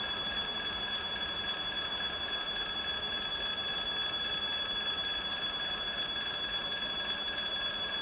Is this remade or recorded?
recorded